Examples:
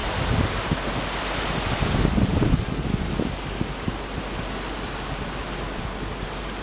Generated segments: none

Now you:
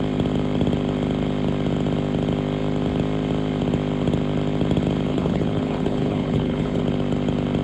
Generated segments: 5.1-6.8 (codec, HILCodec)